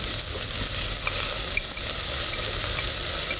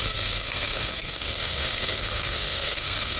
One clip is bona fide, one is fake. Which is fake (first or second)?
second